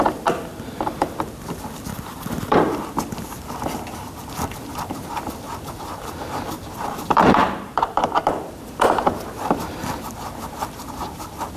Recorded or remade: remade